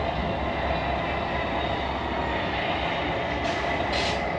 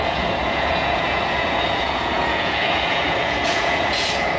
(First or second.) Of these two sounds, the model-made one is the second